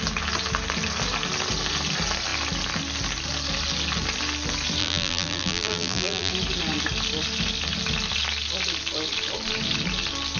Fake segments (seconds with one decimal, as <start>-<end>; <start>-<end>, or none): 4.8-6.3